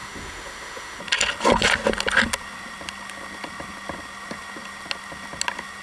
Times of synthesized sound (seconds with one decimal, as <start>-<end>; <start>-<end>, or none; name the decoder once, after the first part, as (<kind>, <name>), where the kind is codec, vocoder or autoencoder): 0.0-1.0 (autoencoder, DAC-VAE)